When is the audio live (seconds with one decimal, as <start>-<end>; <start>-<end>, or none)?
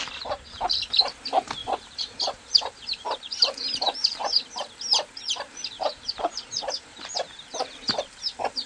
0.0-1.6; 4.5-5.5